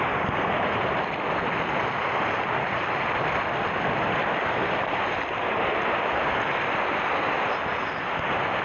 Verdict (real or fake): real